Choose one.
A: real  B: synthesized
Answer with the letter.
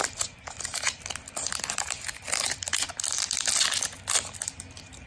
A